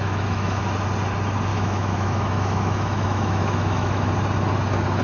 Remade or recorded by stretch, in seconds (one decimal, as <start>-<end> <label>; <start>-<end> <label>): 0.0-0.6 remade; 0.6-1.5 recorded; 1.5-4.1 remade; 4.1-5.0 recorded